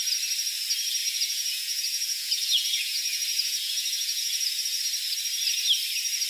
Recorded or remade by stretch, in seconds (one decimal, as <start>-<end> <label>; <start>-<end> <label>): 0.0-1.0 recorded; 1.0-4.8 remade; 4.8-6.3 recorded